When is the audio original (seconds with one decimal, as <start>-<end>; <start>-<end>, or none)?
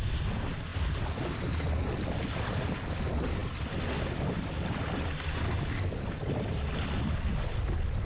0.0-8.0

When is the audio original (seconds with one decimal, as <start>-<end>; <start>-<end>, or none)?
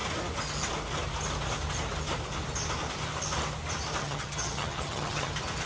0.0-4.0; 5.3-5.7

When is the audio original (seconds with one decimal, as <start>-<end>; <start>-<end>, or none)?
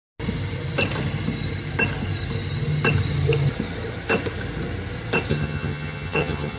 0.0-5.3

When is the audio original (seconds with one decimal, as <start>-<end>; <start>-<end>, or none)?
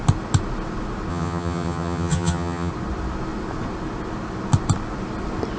0.0-1.1; 2.7-5.6